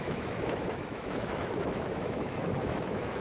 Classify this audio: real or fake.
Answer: fake